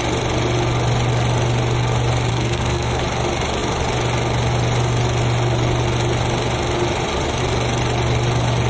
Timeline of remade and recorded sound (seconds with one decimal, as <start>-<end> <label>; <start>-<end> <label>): 0.0-2.3 recorded; 2.3-3.0 remade; 3.0-8.7 recorded